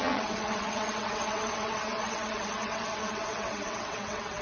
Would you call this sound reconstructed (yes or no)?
yes